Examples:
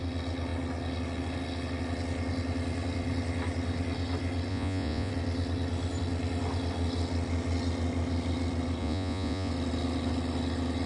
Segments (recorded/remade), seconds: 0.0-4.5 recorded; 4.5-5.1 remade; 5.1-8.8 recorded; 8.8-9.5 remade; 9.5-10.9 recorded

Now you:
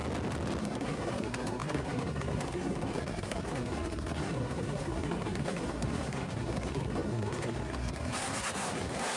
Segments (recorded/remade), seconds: 0.0-0.6 recorded; 0.6-9.2 remade

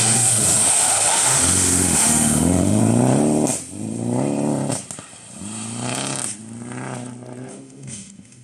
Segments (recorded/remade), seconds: 0.0-2.8 remade; 2.8-7.5 recorded; 7.5-8.4 remade

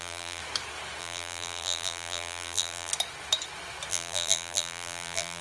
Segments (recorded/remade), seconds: 0.0-0.4 remade; 0.4-1.0 recorded; 1.0-2.9 remade; 2.9-3.9 recorded; 3.9-5.4 remade

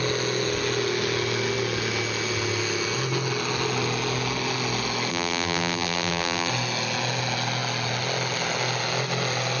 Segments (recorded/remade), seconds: 0.0-5.1 recorded; 5.1-6.5 remade; 6.5-9.6 recorded